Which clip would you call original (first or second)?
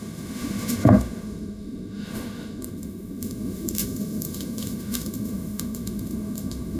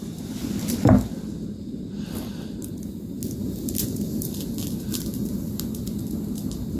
second